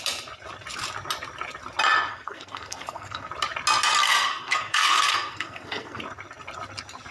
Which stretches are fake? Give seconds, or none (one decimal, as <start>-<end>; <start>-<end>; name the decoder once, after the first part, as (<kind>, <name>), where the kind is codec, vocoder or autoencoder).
2.1-3.3 (codec, SNAC); 4.0-6.0